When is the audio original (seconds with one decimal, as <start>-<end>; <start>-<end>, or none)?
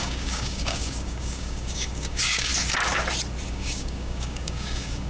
2.5-3.5